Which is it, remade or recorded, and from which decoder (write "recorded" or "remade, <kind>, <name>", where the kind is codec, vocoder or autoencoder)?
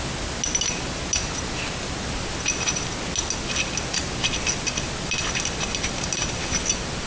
recorded